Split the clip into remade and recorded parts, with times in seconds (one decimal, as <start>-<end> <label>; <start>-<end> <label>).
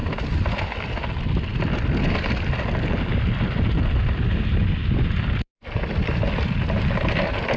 0.0-7.6 recorded